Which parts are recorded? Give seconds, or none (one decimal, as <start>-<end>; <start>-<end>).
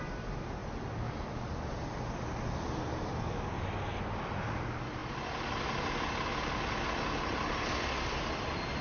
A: 0.0-8.8